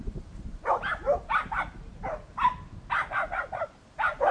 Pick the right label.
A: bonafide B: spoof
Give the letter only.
A